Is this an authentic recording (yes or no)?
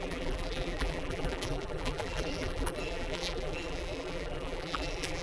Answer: no